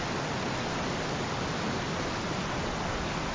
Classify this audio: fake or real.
real